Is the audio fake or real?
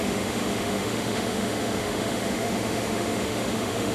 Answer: fake